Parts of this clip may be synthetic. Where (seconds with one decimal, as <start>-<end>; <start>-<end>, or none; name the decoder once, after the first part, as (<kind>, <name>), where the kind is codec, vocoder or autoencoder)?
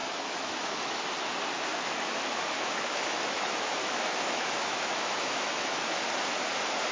0.0-1.0 (autoencoder, DAC-VAE); 1.7-5.8